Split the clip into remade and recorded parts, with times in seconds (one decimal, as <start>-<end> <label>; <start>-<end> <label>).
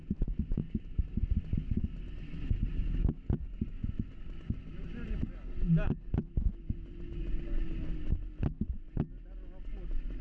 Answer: 0.0-10.2 recorded